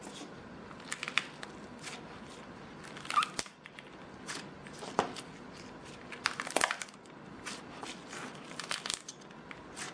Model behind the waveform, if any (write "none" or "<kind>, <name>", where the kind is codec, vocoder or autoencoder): none